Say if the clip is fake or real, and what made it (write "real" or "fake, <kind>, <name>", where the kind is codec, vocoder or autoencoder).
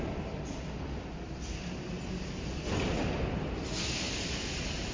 real